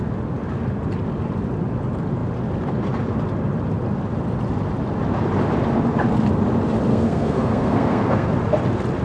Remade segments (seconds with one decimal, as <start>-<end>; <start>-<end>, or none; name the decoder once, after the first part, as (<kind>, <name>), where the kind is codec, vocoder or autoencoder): 6.9-8.3 (codec, SNAC)